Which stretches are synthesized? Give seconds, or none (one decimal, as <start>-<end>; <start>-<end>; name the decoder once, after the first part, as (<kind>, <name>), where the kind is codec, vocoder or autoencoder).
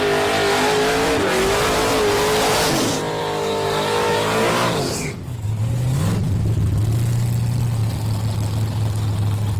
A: 3.2-5.5 (codec, DAC)